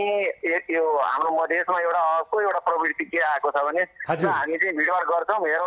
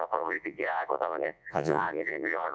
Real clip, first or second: first